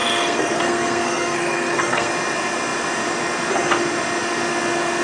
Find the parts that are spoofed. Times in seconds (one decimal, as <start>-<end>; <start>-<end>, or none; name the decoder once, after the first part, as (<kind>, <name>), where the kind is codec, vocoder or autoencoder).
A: 0.0-2.1 (codec, SNAC)